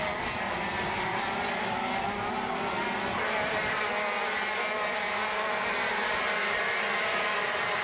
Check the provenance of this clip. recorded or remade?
recorded